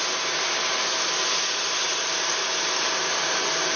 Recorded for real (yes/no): yes